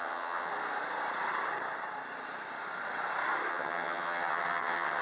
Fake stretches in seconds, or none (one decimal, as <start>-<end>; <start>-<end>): 0.0-0.5; 3.5-5.0